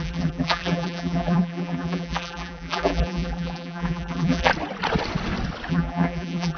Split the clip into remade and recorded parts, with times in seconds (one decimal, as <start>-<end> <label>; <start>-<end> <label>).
0.0-4.5 remade; 4.5-5.7 recorded; 5.7-6.6 remade